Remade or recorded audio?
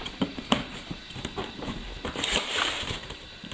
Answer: remade